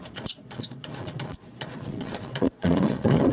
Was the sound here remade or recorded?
remade